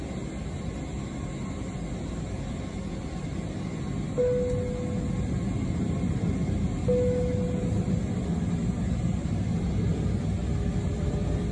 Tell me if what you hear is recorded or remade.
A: recorded